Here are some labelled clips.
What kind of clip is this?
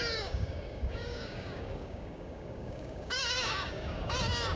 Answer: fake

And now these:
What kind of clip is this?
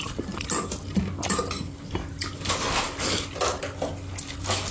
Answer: real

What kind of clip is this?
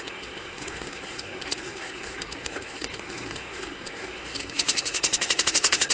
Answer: fake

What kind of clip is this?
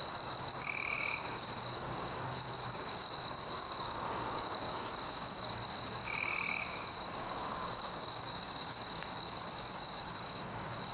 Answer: fake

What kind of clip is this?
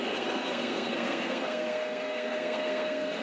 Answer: fake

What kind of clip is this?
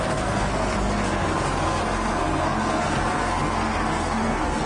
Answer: fake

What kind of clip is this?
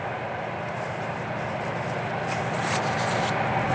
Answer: real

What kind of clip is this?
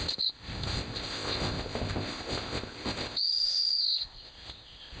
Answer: fake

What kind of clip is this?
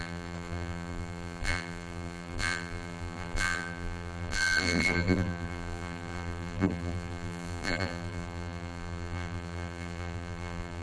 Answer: fake